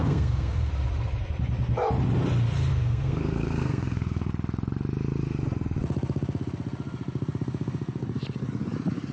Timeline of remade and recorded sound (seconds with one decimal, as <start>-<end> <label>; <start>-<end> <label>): 0.0-0.7 remade; 0.7-2.7 recorded; 2.7-4.3 remade; 4.3-9.1 recorded